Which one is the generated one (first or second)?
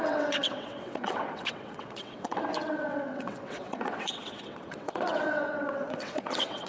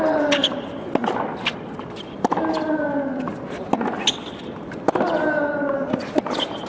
first